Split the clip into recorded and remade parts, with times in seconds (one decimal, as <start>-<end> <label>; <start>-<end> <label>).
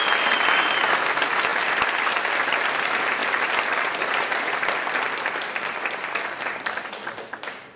0.0-7.8 recorded